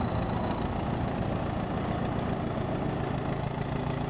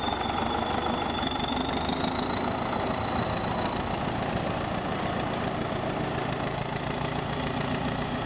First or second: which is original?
first